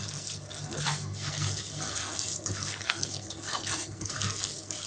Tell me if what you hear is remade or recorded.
remade